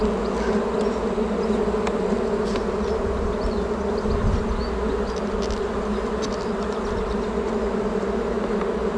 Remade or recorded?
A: recorded